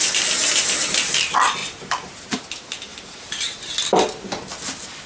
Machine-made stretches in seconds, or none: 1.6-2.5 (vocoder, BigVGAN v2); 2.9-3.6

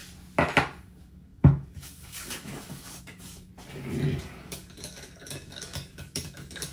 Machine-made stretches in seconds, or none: 0.8-3.5 (codec, DAC); 4.2-6.7

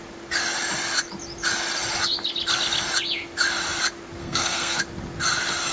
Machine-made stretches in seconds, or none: 4.2-4.8 (codec, SNAC)

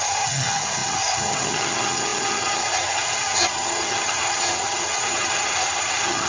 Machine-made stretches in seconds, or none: 0.0-6.3 (vocoder, HiFi-GAN)

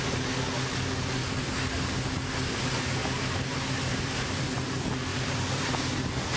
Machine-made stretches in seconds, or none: 1.2-1.7 (vocoder, BigVGAN v2); 5.1-5.8

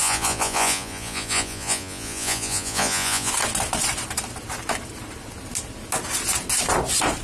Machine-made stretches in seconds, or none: 0.0-3.3 (vocoder, Vocos)